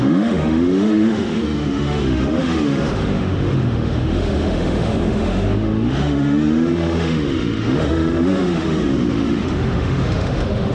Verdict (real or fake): fake